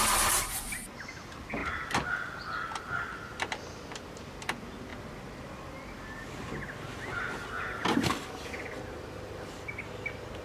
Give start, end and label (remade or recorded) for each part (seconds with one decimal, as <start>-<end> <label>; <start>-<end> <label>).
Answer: 0.0-10.4 recorded